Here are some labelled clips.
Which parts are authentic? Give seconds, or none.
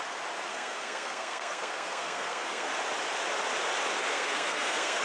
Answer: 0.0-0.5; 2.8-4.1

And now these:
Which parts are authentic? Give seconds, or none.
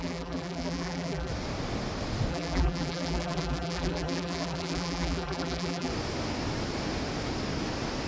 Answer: 1.3-2.3; 5.9-8.1